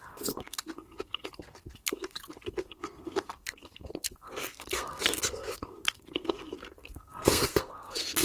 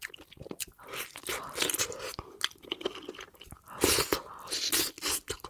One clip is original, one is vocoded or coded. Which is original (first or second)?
second